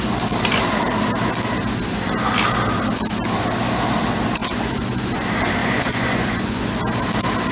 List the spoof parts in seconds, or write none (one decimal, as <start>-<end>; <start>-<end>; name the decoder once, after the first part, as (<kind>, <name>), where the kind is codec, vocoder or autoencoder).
4.4-5.1 (vocoder, Vocos); 5.6-6.7